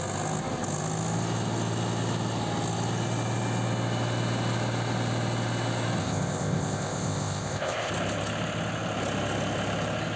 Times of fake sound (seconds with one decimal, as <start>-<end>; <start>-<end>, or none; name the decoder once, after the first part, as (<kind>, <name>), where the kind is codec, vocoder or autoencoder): 6.0-7.9 (codec, ZipCodec)